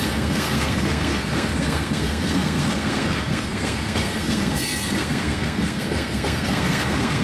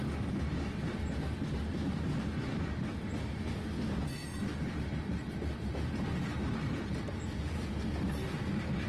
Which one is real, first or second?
second